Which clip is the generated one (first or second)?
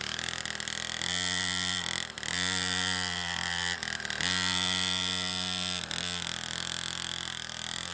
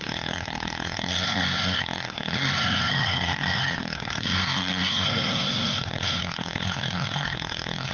second